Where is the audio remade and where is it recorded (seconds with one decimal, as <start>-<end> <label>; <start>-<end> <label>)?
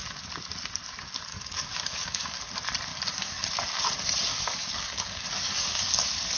0.0-1.3 recorded; 1.3-2.4 remade; 2.4-2.9 recorded; 2.9-3.5 remade; 3.5-4.3 recorded; 4.3-5.9 remade; 5.9-6.4 recorded